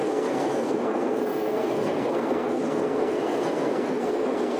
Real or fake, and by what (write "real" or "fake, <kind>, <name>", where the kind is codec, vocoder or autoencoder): fake, codec, SNAC